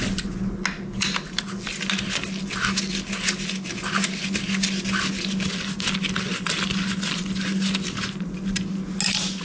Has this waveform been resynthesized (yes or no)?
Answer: no